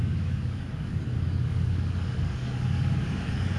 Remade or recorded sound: remade